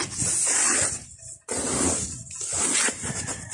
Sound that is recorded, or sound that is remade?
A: recorded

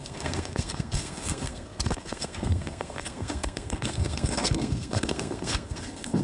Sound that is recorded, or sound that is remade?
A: remade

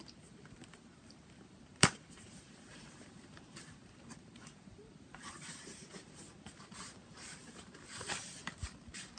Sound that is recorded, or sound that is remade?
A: remade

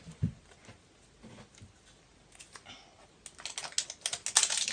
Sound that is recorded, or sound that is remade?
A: recorded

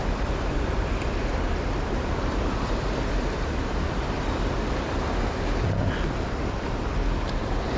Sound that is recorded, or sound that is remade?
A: remade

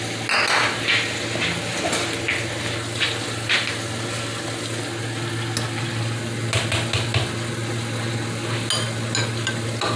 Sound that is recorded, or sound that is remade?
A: recorded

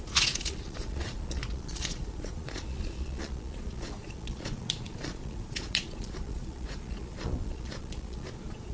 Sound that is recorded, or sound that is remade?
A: remade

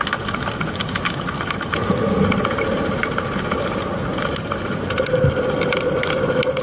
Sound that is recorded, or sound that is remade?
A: recorded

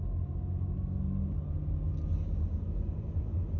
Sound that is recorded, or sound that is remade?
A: recorded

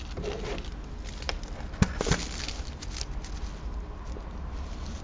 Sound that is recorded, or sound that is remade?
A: recorded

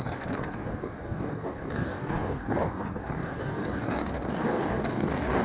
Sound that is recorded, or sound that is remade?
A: remade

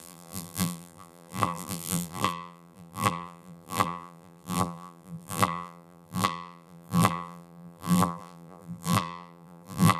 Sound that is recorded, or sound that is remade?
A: remade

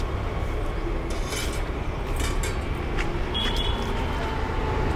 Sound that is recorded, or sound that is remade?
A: recorded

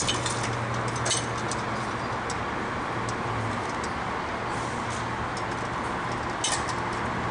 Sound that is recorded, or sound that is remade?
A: recorded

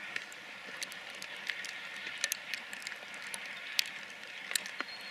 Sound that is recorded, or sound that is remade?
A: recorded